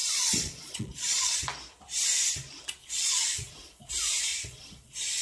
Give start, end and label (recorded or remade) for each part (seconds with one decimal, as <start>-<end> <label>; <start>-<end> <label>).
0.0-1.4 remade; 1.4-2.8 recorded; 2.8-3.9 remade; 3.9-4.3 recorded; 4.3-5.2 remade